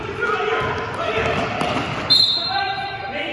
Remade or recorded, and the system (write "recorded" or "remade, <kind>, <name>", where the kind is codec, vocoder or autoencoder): recorded